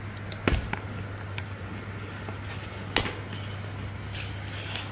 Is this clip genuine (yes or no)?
yes